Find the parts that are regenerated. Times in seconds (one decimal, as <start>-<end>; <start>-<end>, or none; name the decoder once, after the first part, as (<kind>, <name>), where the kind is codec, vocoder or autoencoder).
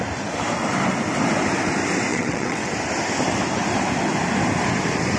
2.1-2.7 (vocoder, WaveNeXt)